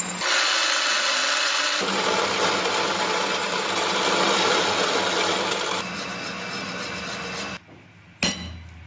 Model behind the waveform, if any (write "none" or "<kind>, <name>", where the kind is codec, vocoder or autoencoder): none